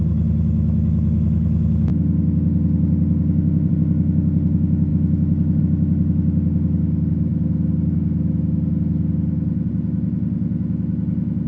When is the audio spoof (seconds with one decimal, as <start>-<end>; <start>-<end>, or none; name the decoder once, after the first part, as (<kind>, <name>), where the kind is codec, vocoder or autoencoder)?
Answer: none